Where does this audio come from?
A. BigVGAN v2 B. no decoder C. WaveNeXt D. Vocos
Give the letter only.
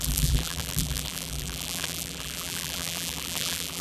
A